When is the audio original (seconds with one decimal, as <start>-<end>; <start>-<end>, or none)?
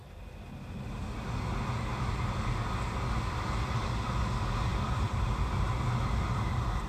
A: 0.0-4.7; 5.8-6.9